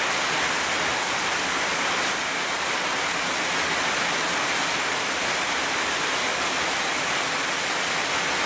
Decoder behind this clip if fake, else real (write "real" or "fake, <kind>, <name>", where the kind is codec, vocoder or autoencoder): real